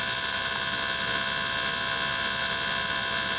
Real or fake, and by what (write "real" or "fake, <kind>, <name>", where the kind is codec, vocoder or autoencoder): real